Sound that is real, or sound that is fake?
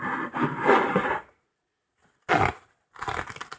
real